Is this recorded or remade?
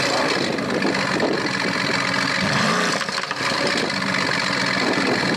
recorded